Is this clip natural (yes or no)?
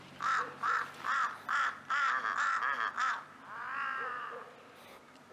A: yes